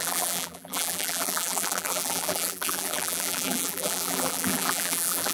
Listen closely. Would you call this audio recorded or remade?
remade